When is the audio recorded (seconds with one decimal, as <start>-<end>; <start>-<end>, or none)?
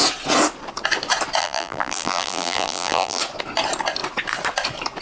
0.0-1.4; 3.2-5.0